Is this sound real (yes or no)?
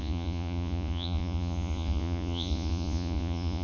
no